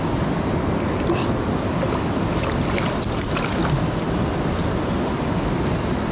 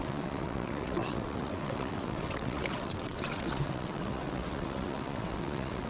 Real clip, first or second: first